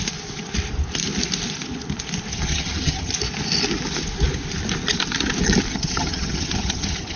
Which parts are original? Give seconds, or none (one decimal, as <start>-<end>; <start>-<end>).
0.0-2.3; 3.1-5.7